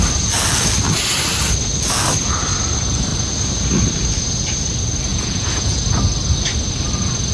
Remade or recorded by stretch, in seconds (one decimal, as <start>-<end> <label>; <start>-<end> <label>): 0.0-5.1 recorded; 5.1-5.8 remade; 5.8-7.3 recorded